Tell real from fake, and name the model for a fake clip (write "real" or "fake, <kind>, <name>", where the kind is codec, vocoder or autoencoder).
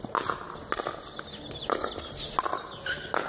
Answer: real